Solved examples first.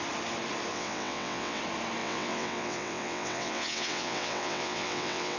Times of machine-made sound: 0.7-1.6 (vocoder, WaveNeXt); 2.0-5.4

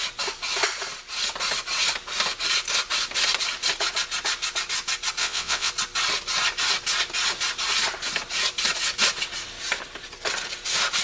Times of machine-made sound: 5.2-5.7 (vocoder, WaveNeXt)

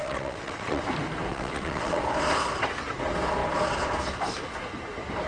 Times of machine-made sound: 0.0-0.8 (vocoder, WaveNeXt); 1.3-2.0

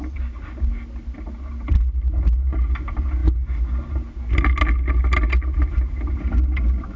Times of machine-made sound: none

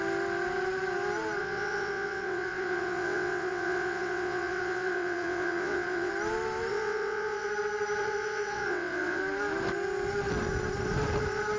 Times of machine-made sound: 1.4-6.1 (vocoder, WaveNeXt); 6.7-7.5; 8.0-9.2